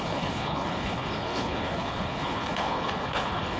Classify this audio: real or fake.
fake